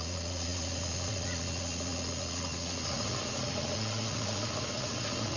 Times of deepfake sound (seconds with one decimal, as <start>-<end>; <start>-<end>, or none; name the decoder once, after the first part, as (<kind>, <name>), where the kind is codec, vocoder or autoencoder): 0.0-5.4 (vocoder, Vocos)